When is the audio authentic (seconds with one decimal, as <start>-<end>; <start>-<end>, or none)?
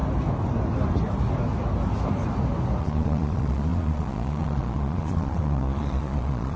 0.0-2.8